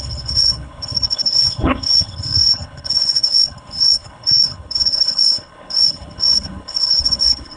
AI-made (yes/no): yes